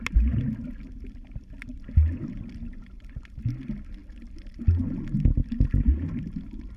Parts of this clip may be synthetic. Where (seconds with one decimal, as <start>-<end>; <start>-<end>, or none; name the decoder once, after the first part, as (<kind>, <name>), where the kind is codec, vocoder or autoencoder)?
none